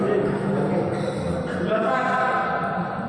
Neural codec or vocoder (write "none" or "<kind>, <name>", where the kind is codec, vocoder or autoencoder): none